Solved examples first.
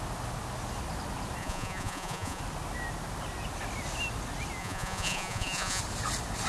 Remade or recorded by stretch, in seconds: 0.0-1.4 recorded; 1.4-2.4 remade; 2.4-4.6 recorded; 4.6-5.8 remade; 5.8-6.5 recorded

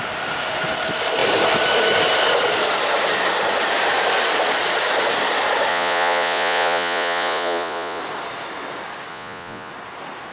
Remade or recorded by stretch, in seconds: 0.0-5.7 recorded; 5.7-8.0 remade; 8.0-9.1 recorded; 9.1-9.7 remade; 9.7-10.3 recorded

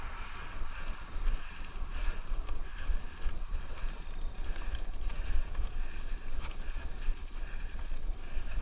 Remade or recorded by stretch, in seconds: 0.0-8.6 recorded

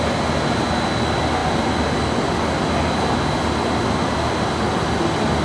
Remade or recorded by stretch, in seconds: 0.0-5.4 recorded